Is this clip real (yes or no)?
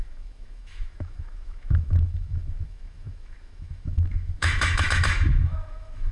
no